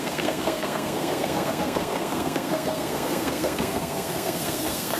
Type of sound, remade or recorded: remade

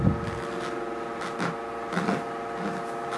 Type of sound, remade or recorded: recorded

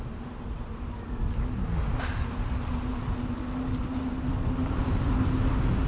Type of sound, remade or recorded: recorded